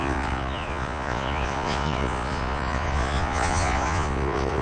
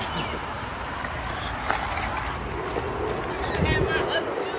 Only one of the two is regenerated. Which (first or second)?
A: first